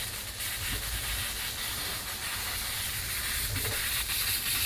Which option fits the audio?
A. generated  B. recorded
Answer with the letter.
B